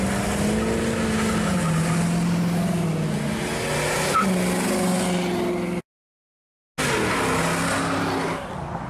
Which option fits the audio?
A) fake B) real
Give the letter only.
B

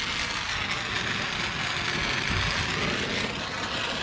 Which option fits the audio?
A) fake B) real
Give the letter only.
B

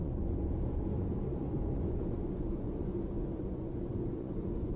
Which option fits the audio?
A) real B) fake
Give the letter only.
B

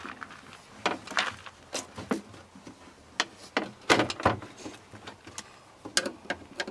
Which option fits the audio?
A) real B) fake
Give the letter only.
A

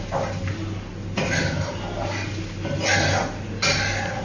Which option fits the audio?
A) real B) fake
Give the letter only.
A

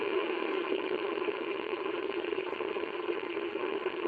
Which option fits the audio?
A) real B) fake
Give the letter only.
B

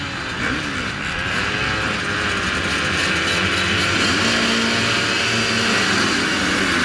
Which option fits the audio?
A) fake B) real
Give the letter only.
B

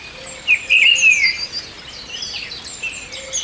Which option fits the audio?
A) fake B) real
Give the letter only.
B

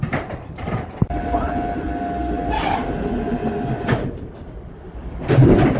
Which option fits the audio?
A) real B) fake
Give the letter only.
A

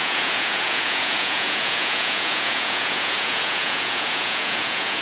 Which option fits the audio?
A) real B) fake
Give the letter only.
B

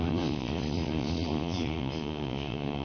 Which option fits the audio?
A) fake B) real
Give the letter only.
A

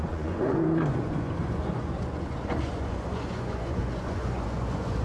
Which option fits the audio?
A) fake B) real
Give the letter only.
A